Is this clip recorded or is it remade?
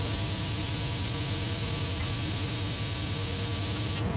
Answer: recorded